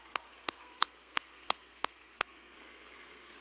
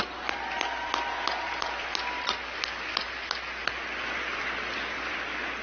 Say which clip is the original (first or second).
second